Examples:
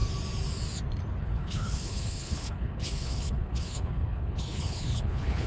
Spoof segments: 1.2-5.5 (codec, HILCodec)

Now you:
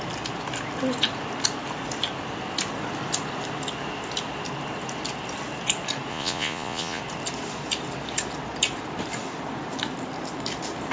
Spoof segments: 6.1-7.0 (vocoder, Vocos)